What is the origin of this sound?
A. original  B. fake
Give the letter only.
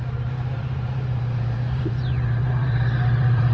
B